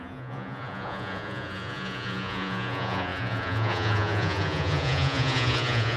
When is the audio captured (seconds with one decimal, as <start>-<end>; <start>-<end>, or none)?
none